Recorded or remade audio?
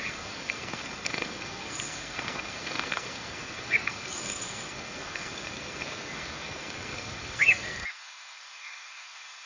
remade